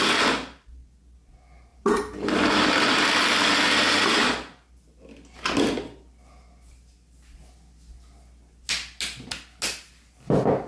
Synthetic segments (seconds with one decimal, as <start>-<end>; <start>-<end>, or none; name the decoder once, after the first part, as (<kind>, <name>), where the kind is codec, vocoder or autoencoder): 1.7-3.0 (vocoder, BigVGAN v2)